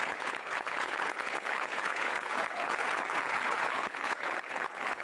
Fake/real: fake